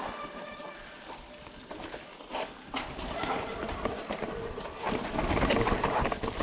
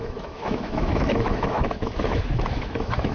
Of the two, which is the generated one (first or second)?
second